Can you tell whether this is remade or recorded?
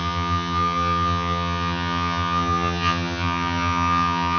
remade